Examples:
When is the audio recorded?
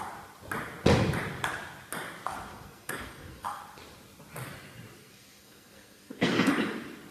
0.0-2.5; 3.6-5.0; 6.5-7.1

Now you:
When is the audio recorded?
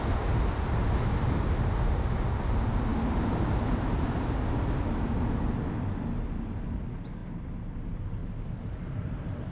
0.0-9.5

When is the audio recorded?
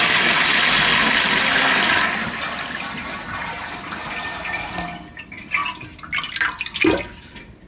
0.0-7.7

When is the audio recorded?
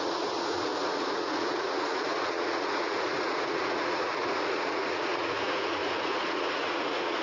none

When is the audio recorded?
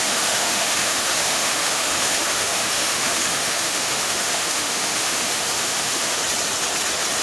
6.2-7.2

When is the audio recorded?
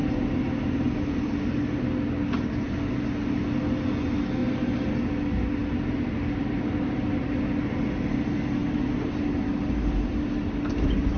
1.4-4.4; 4.9-5.6; 7.2-11.2